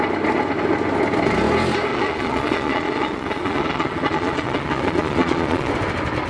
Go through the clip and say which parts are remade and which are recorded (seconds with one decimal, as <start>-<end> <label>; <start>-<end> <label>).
0.0-1.9 recorded; 1.9-5.7 remade; 5.7-6.3 recorded